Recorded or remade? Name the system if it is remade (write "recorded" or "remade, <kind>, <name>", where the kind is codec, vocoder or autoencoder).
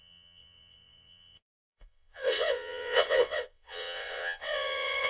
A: remade, vocoder, WaveNeXt